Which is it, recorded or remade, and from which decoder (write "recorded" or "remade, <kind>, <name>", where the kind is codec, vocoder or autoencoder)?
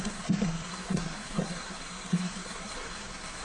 remade, codec, SNAC